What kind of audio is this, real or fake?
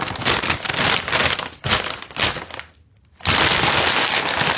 real